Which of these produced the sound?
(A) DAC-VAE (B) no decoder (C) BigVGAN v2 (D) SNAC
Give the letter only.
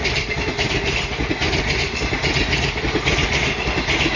B